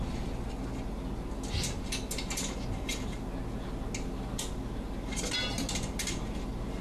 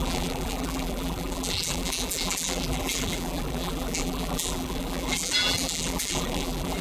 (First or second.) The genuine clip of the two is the first